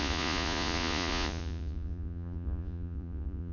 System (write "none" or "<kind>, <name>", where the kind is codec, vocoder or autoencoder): vocoder, Vocos